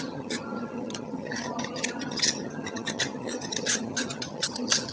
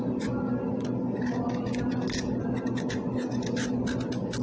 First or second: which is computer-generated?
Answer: first